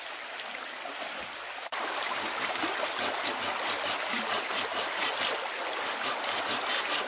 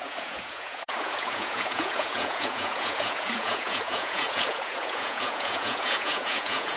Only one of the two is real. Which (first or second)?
first